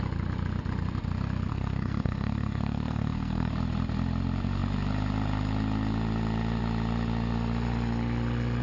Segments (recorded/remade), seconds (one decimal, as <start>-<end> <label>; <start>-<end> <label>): 0.0-1.5 recorded; 1.5-3.5 remade; 3.5-8.6 recorded